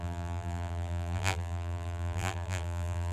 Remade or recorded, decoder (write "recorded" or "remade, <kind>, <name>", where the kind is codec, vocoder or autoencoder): remade, vocoder, BigVGAN v2